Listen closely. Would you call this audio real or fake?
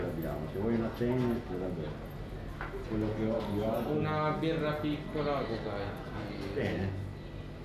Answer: real